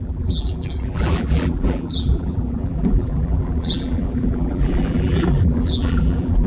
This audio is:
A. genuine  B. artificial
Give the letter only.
B